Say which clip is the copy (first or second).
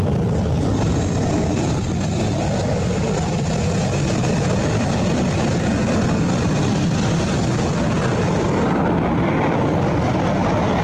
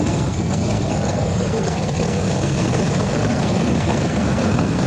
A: second